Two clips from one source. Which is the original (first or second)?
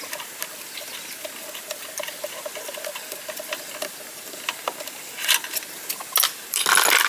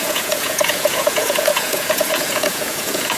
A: first